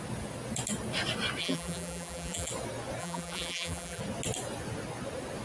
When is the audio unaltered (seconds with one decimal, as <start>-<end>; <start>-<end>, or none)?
0.0-1.4; 2.5-3.0; 4.0-5.4